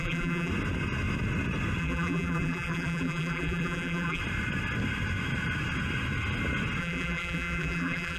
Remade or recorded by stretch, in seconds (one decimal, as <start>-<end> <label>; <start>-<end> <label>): 0.0-0.5 remade; 0.5-1.8 recorded; 1.8-4.2 remade; 4.2-6.8 recorded; 6.8-8.2 remade

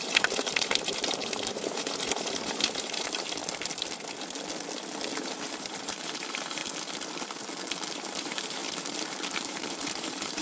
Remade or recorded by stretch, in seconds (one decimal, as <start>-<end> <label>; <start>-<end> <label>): 0.0-3.4 remade; 3.4-5.2 recorded; 5.2-6.6 remade; 6.6-7.9 recorded; 7.9-8.6 remade; 8.6-9.3 recorded; 9.3-10.4 remade